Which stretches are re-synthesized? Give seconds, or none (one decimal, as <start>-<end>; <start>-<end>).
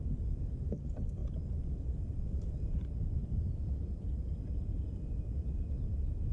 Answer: 3.2-5.7